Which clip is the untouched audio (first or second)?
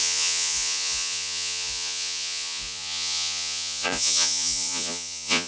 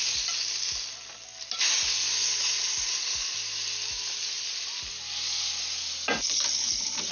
second